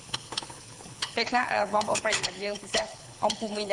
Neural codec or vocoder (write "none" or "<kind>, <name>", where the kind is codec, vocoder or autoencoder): codec, HILCodec